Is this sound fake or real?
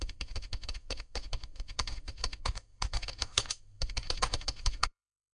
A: fake